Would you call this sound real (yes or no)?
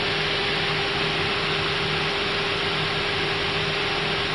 yes